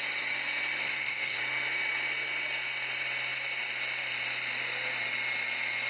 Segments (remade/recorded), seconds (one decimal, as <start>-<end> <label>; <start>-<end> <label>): 0.0-0.8 recorded; 0.8-1.4 remade; 1.4-5.9 recorded